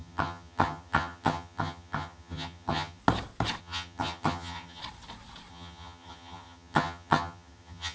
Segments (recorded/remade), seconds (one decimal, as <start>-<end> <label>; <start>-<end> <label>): 0.0-3.0 remade; 3.0-3.6 recorded; 3.6-4.8 remade; 4.8-5.5 recorded; 5.5-7.9 remade